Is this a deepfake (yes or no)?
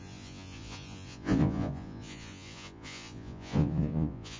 yes